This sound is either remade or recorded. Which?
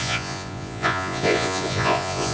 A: remade